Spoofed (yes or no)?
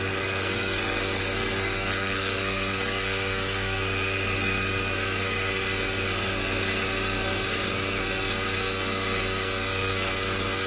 yes